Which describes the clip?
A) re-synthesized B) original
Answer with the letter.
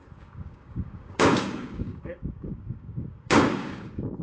A